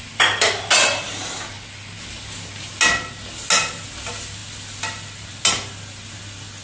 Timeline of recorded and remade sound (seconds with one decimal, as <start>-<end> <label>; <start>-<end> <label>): 0.0-6.6 recorded